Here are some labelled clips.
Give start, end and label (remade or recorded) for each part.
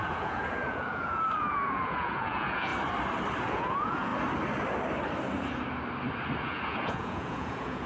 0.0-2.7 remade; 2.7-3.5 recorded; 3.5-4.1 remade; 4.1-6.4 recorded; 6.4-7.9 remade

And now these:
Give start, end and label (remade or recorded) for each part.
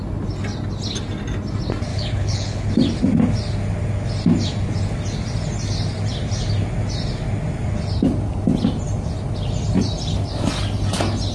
0.0-1.9 recorded; 1.9-2.7 remade; 2.7-11.3 recorded